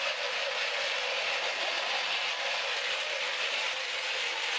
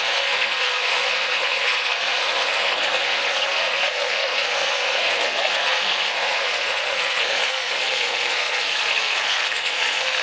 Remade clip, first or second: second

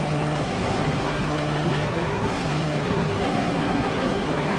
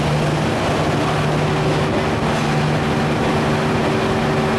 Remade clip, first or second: first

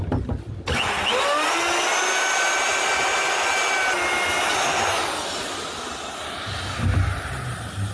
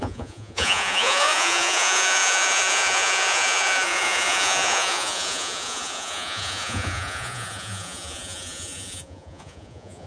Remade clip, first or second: second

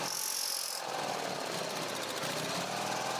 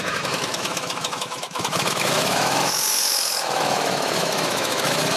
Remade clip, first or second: second